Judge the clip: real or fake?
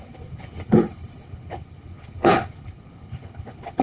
fake